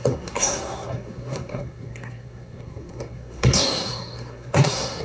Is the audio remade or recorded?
remade